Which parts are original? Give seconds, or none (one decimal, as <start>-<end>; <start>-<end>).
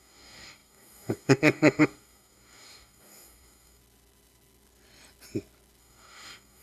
3.8-5.8